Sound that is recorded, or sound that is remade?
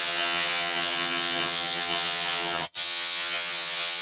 remade